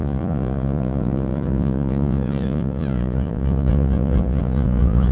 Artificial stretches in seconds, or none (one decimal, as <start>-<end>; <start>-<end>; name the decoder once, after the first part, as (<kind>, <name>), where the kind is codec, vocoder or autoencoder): 0.0-5.1 (vocoder, Vocos)